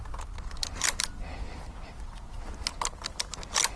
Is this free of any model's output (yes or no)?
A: yes